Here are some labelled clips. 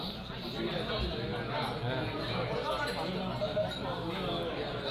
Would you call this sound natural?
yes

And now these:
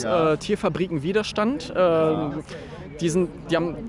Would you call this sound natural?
yes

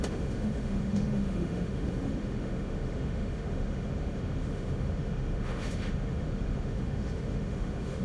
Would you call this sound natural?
no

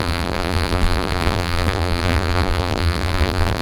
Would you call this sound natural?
no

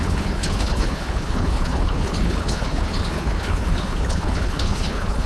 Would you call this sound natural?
no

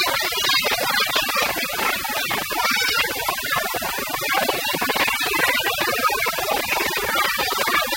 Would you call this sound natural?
yes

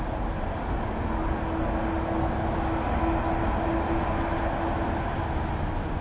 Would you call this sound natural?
yes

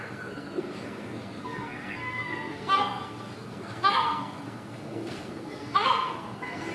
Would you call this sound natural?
no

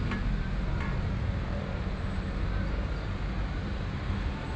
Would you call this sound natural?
yes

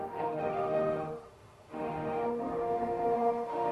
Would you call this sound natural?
no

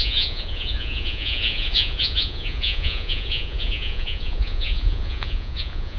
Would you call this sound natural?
no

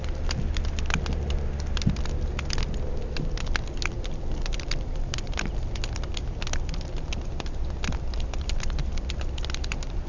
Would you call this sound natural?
yes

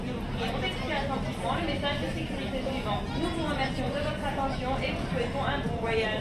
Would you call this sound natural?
yes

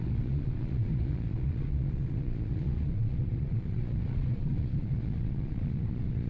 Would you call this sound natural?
no